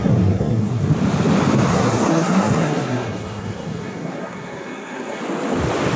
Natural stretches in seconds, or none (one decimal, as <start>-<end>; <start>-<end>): 0.9-1.7; 5.2-6.0